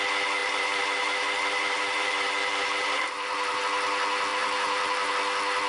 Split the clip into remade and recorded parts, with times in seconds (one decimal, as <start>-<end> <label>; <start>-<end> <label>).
0.0-0.4 recorded; 0.4-3.6 remade; 3.6-4.3 recorded; 4.3-5.1 remade; 5.1-5.7 recorded